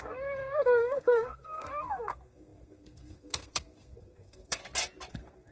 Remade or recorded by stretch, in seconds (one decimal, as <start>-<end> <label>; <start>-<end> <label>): 0.0-4.6 remade; 4.6-5.1 recorded; 5.1-5.5 remade